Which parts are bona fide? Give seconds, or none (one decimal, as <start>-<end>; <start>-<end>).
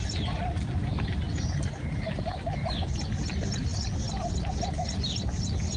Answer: 0.0-5.8